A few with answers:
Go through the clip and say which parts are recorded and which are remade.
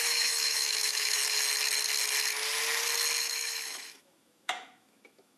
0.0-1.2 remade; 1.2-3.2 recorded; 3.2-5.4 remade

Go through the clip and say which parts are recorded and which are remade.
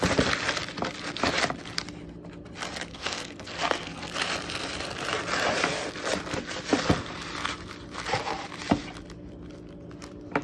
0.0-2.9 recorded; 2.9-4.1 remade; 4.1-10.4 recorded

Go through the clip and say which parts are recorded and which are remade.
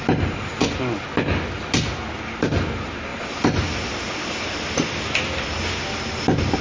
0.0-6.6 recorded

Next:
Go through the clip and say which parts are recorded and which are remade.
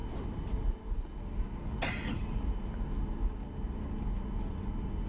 0.0-5.1 recorded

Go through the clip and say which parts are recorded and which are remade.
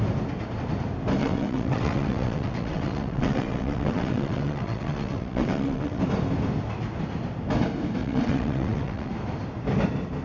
0.0-1.2 recorded; 1.2-6.0 remade; 6.0-8.0 recorded; 8.0-9.1 remade; 9.1-10.2 recorded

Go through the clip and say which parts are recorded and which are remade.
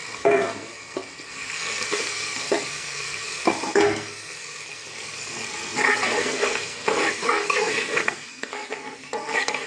0.0-9.7 remade